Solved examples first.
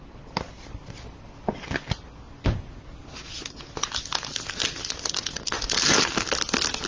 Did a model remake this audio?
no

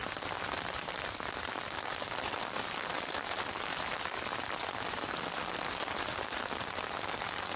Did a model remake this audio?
no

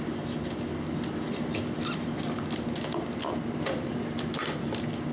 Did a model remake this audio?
no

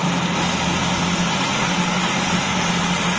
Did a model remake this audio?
no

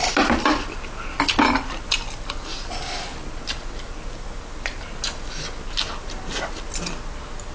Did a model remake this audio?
no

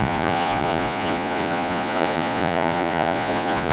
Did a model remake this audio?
yes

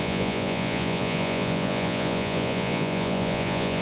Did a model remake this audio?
yes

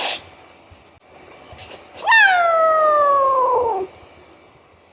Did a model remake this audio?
no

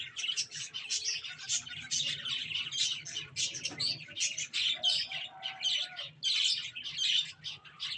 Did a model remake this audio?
no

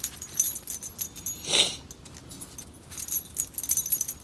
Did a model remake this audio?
no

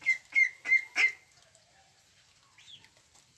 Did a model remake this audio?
no